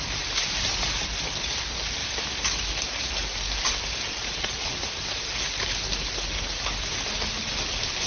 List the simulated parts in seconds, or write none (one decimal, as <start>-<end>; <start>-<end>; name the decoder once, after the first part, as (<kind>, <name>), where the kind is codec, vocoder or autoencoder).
4.4-5.0 (vocoder, Vocos)